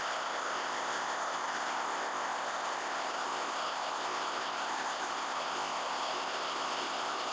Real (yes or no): no